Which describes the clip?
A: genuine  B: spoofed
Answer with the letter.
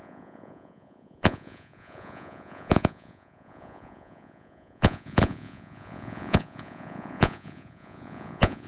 B